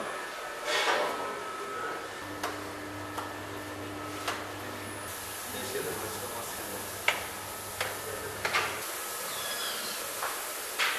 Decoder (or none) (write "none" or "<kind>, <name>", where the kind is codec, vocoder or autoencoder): none